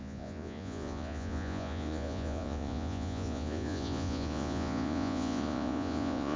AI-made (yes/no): yes